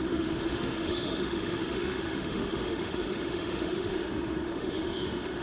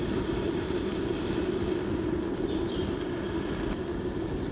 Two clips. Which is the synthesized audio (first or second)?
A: first